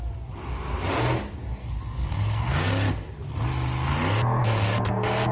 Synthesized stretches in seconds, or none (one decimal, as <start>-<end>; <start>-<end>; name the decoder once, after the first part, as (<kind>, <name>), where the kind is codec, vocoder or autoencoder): 1.6-2.7 (codec, SNAC); 4.4-5.3